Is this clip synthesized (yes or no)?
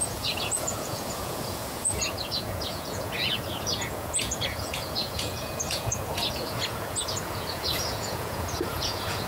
yes